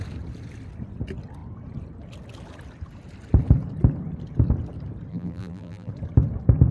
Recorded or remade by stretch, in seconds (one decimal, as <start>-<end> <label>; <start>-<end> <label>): 0.0-5.1 recorded; 5.1-5.9 remade; 5.9-6.7 recorded